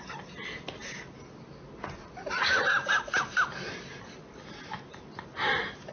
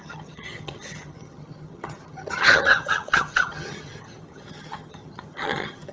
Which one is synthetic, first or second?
second